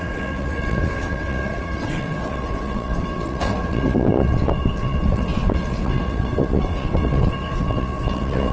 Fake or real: fake